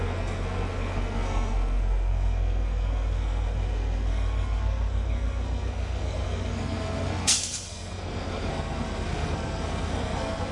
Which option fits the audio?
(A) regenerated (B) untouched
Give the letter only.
A